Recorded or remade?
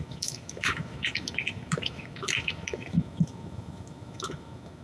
remade